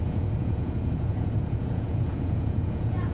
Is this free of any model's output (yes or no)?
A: no